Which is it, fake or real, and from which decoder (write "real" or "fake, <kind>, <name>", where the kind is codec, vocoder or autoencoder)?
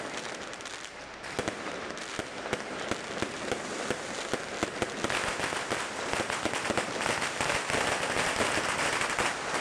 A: fake, vocoder, BigVGAN v2